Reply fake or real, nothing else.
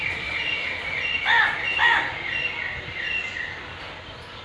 real